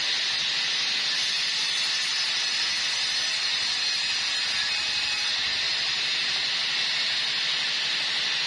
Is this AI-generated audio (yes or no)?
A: no